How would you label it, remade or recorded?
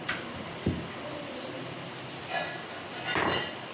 recorded